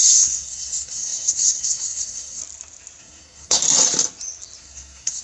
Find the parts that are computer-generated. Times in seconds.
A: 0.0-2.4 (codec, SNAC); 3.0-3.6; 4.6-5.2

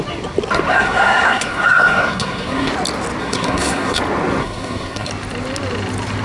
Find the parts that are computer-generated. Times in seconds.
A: 0.7-2.7 (codec, SNAC); 3.2-4.0; 4.4-5.1

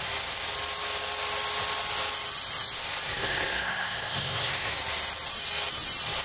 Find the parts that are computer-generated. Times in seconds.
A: 3.2-4.7 (codec, SNAC)

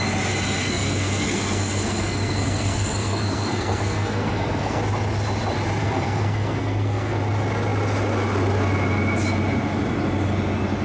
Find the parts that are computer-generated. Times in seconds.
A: 0.6-4.8 (codec, SNAC); 5.8-7.2